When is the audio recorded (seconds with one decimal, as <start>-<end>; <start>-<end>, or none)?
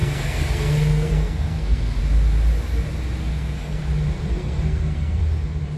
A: 2.0-3.3; 3.8-4.3; 5.2-5.8